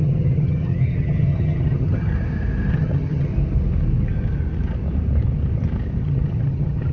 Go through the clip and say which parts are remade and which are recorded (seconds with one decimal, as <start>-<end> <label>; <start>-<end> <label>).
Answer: 0.0-2.1 remade; 2.1-2.7 recorded; 2.7-3.3 remade; 3.3-6.0 recorded; 6.0-6.9 remade